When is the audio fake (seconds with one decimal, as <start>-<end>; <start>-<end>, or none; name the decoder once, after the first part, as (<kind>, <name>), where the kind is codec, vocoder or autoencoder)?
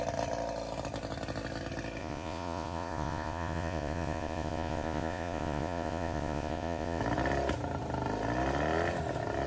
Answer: 2.0-7.0 (vocoder, Vocos)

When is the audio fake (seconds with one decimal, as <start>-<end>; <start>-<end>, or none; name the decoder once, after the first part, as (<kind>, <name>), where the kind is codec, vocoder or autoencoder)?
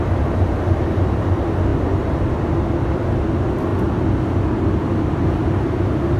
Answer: none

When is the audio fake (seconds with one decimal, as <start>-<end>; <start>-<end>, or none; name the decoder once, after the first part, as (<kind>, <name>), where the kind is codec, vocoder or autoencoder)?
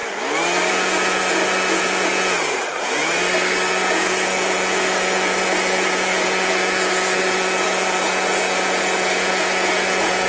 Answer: 0.7-3.0 (vocoder, Vocos); 3.7-10.3